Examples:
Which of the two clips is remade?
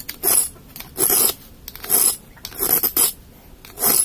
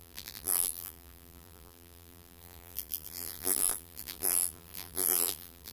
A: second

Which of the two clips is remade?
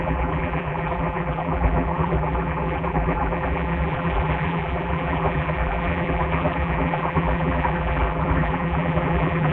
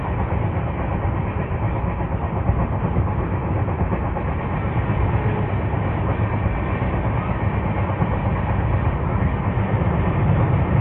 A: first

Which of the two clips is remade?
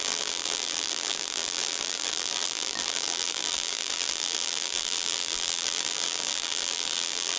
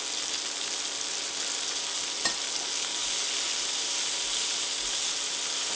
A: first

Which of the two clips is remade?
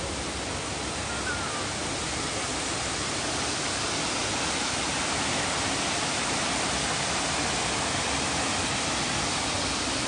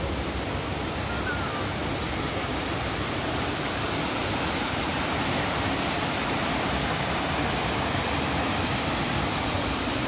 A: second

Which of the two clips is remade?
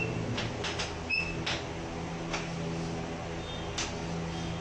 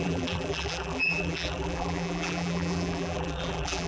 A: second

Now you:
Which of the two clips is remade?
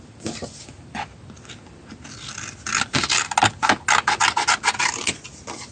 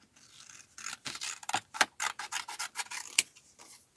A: second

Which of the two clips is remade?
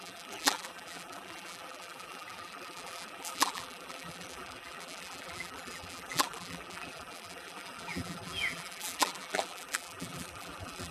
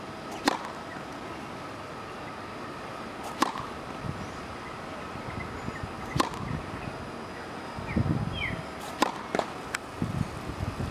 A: first